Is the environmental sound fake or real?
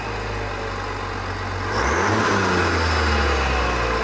real